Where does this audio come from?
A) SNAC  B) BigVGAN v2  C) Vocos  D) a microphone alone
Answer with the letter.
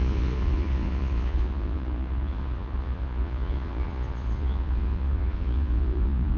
C